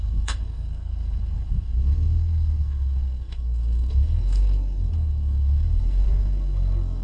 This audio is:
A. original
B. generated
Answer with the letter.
B